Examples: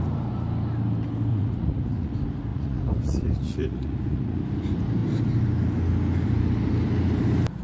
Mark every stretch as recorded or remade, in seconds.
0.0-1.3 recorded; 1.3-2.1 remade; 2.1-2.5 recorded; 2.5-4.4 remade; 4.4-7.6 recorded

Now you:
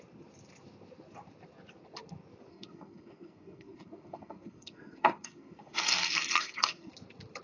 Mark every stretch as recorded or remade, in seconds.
0.0-2.5 recorded; 2.5-6.9 remade; 6.9-7.4 recorded

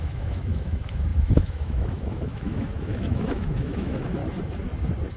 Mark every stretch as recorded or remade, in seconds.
0.0-4.2 remade; 4.2-5.2 recorded

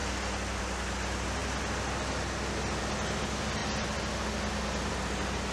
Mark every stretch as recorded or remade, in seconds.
0.0-5.5 recorded

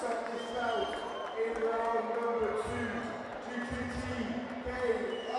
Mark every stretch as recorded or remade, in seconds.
0.0-5.4 recorded

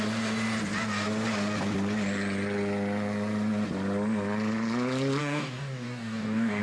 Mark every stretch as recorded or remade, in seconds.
0.0-5.2 recorded; 5.2-6.6 remade